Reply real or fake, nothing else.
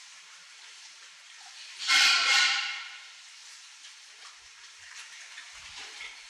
fake